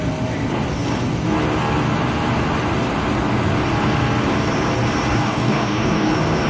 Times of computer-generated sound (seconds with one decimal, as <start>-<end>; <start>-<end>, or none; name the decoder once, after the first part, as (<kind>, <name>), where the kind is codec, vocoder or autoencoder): 5.1-6.1 (codec, DAC)